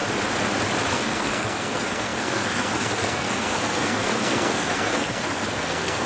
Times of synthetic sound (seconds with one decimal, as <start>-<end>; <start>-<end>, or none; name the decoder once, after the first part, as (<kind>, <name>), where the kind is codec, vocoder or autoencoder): 0.9-6.1 (codec, SNAC)